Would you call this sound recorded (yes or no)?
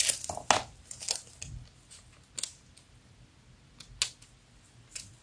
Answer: yes